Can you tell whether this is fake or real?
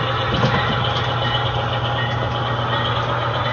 real